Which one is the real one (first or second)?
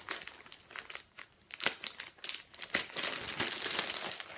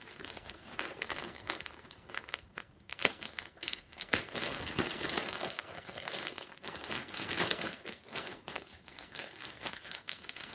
first